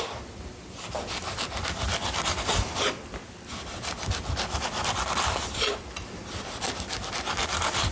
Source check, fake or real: real